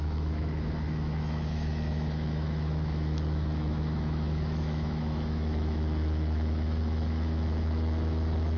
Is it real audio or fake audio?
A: fake